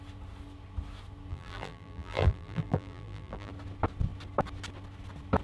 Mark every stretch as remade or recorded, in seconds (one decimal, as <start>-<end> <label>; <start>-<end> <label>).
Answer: 0.0-1.3 recorded; 1.3-3.5 remade; 3.5-5.4 recorded